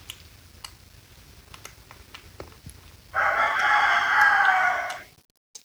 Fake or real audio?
real